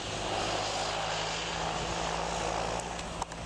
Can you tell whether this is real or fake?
real